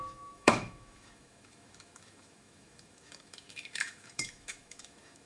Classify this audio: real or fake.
fake